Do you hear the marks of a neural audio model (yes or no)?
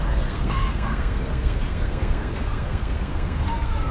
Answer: yes